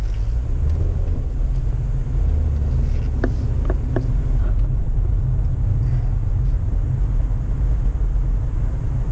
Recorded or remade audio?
recorded